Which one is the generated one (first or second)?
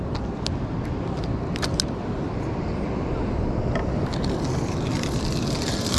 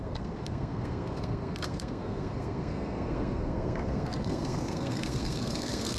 second